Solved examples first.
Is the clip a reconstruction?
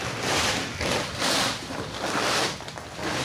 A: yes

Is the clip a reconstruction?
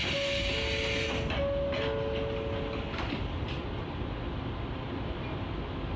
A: no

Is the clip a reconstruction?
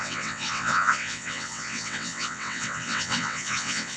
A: yes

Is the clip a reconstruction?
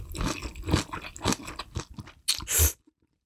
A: no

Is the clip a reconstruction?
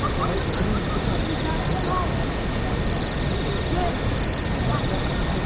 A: no